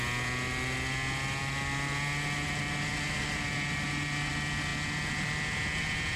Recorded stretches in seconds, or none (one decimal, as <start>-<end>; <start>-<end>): 0.0-6.2